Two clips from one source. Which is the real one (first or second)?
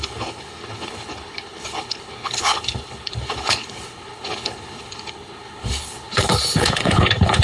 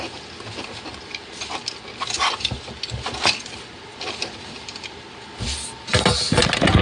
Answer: second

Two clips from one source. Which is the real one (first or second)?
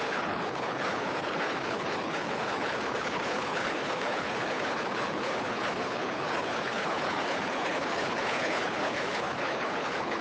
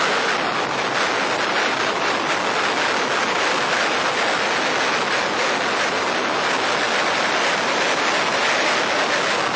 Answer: second